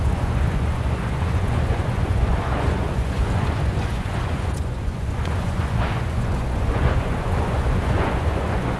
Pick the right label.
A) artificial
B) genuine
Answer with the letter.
A